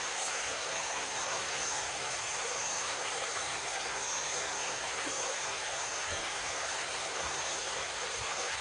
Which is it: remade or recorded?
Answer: remade